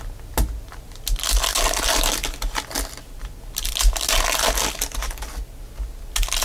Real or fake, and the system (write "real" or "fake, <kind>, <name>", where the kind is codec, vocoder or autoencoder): real